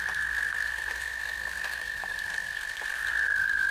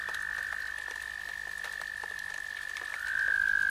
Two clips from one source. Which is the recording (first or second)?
second